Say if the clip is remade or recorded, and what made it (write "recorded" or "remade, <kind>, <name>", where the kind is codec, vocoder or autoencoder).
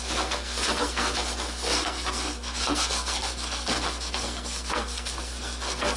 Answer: remade, codec, SNAC